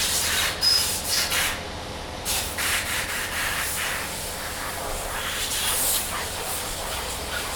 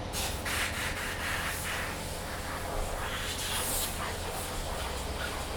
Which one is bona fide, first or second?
second